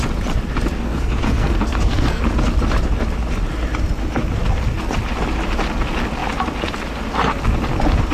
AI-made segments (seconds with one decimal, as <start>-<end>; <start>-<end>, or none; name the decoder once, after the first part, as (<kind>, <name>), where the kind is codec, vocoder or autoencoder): 0.8-2.2 (codec, SNAC)